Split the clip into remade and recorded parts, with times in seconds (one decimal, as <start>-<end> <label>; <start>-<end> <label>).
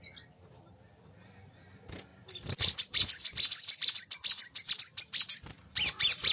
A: 0.0-6.3 recorded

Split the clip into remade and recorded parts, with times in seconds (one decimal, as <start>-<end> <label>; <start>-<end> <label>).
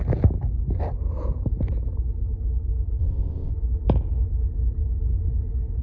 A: 0.0-3.0 recorded; 3.0-3.5 remade; 3.5-5.8 recorded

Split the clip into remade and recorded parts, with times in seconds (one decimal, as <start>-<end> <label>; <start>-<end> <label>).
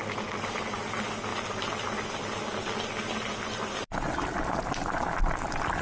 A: 0.0-5.8 recorded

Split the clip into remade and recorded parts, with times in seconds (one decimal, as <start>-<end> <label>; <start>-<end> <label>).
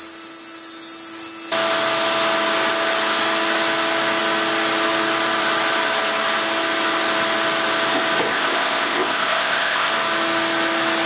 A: 0.0-8.3 recorded; 8.3-9.9 remade; 9.9-11.1 recorded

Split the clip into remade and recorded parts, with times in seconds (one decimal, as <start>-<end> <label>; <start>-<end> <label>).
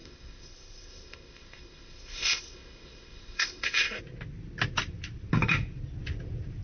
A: 0.0-4.0 remade; 4.0-6.6 recorded